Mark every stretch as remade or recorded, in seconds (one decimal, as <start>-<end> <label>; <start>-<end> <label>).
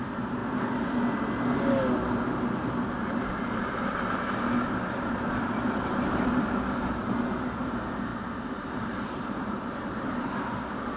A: 0.0-0.4 remade; 0.4-3.1 recorded; 3.1-10.1 remade; 10.1-11.0 recorded